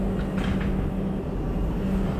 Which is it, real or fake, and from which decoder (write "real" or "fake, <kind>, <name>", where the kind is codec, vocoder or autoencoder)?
real